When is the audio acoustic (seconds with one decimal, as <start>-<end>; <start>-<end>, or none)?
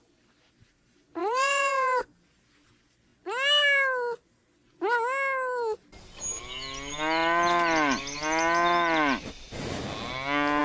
0.0-1.2; 2.0-10.6